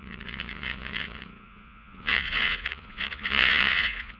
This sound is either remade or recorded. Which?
remade